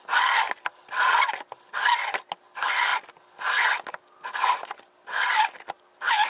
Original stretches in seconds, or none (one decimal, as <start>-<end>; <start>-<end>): 0.0-6.3